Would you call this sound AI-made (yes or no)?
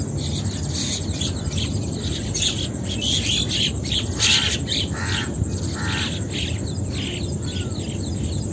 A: no